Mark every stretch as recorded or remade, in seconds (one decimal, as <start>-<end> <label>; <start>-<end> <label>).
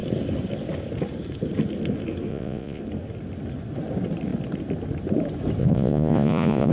0.0-2.3 recorded; 2.3-2.8 remade; 2.8-5.6 recorded; 5.6-6.7 remade